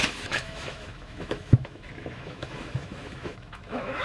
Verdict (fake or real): fake